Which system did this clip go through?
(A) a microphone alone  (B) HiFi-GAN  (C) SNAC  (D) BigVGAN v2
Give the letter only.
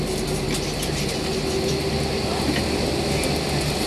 A